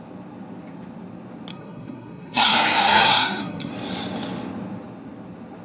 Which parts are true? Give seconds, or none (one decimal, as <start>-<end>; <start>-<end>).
0.0-1.5; 3.7-5.6